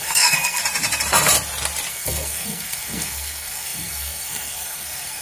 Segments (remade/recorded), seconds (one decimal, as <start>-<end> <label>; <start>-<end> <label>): 0.0-0.6 remade; 0.6-1.9 recorded; 1.9-5.2 remade